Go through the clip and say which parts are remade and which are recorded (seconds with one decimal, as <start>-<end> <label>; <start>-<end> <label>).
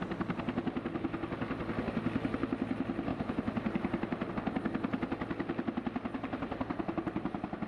0.0-3.1 recorded; 3.1-4.3 remade; 4.3-7.7 recorded